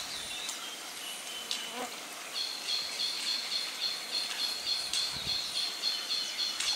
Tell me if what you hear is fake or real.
real